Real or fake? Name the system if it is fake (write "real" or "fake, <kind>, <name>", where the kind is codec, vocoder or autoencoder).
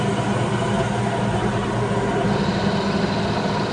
real